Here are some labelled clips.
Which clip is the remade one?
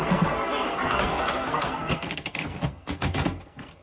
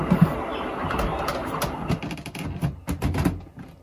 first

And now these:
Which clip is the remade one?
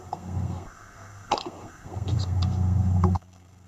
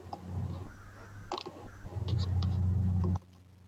first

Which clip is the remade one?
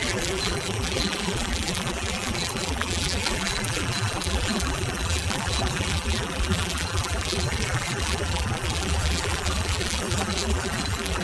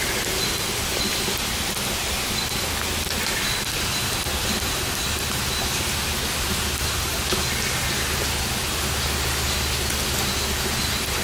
first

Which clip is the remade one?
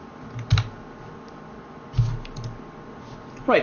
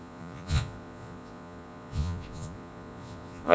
second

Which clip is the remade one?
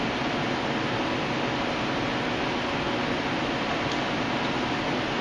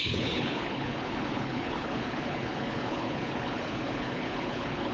second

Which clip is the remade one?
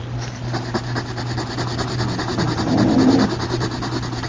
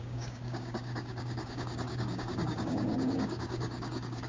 second